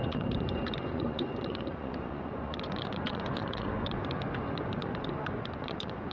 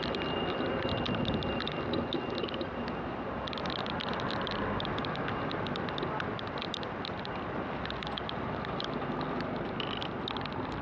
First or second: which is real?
second